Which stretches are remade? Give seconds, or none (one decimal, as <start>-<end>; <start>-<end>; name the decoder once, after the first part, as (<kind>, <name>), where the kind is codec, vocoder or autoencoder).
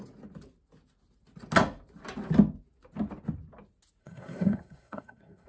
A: 4.0-5.5 (codec, SNAC)